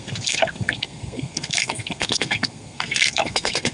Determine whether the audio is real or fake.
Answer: fake